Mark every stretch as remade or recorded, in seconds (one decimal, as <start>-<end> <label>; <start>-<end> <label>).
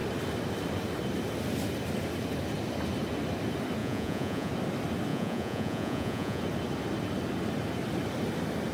0.0-3.8 recorded; 3.8-4.5 remade; 4.5-5.1 recorded; 5.1-6.4 remade; 6.4-8.7 recorded